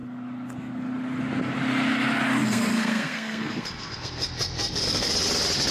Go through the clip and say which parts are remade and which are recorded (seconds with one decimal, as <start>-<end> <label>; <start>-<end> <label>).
0.0-2.4 recorded; 2.4-5.1 remade; 5.1-5.7 recorded